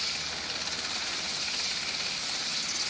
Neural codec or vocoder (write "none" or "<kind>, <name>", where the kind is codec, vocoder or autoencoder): none